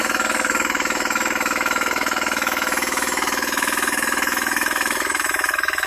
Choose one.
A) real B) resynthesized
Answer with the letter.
B